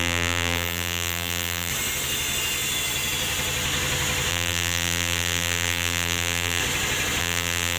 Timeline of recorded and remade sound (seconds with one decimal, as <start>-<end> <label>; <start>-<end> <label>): 0.0-1.7 remade; 1.7-4.3 recorded; 4.3-6.6 remade; 6.6-7.2 recorded; 7.2-7.8 remade